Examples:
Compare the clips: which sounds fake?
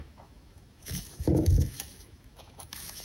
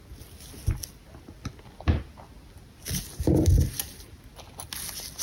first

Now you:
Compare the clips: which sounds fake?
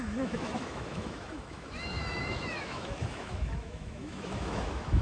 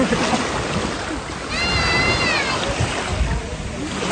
first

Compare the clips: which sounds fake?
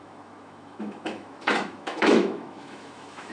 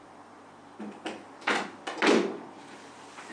first